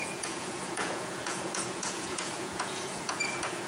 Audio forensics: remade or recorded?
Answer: remade